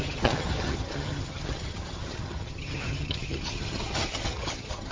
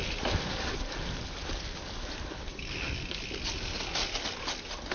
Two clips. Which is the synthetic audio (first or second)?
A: first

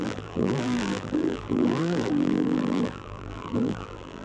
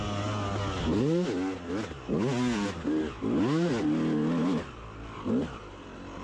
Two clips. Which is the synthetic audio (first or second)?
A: first